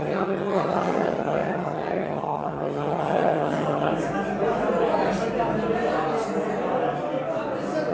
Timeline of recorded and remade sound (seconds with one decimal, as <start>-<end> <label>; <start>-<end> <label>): 0.0-3.9 remade; 3.9-7.9 recorded